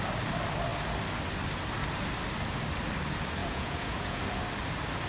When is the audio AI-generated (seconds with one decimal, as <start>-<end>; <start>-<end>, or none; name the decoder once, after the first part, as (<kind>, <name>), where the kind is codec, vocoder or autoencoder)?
3.4-4.2 (vocoder, Vocos)